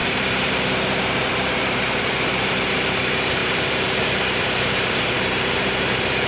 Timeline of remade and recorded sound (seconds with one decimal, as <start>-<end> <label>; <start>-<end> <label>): 0.0-6.3 remade